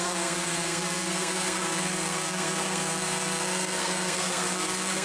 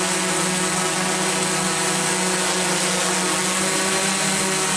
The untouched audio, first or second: second